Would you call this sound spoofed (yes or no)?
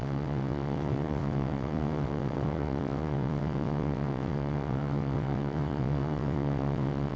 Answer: yes